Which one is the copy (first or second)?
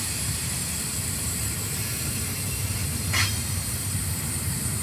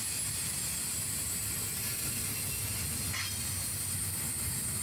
first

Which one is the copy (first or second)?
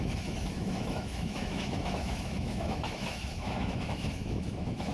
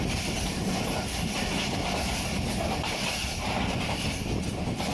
first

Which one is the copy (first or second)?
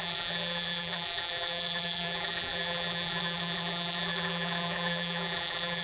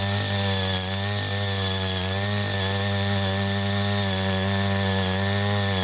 first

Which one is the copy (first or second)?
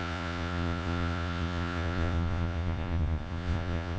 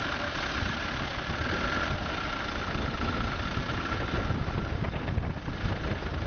first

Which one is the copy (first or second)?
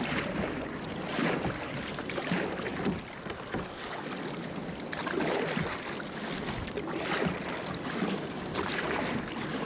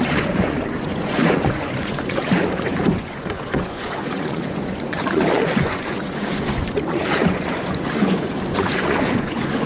second